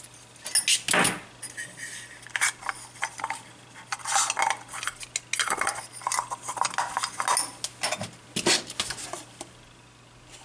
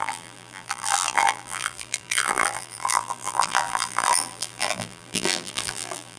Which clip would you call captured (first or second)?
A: first